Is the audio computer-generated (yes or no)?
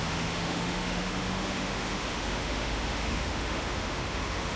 yes